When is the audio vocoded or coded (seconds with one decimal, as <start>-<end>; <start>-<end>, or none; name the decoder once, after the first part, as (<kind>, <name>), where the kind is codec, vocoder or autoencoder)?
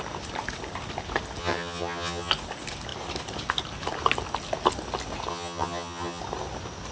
1.4-2.3 (vocoder, HiFi-GAN); 5.3-6.2